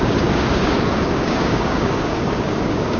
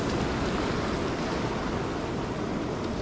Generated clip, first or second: first